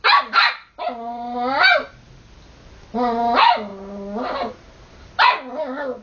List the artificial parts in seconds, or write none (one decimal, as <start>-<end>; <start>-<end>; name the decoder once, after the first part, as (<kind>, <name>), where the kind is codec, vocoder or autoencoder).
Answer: none